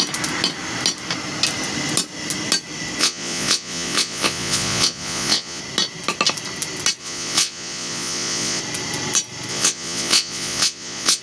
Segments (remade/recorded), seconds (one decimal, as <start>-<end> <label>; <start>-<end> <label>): 0.0-3.0 recorded; 3.0-5.6 remade; 5.6-7.0 recorded; 7.0-8.6 remade; 8.6-9.5 recorded; 9.5-11.2 remade